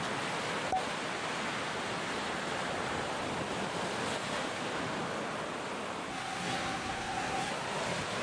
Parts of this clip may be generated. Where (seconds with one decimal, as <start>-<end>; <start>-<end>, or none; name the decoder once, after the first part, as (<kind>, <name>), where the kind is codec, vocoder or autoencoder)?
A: 6.1-7.5 (codec, SNAC)